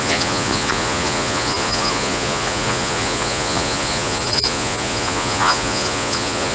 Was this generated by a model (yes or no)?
yes